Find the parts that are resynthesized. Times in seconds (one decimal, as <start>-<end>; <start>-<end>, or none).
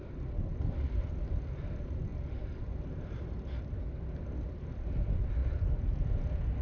none